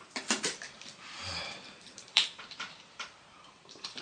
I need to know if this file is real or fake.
fake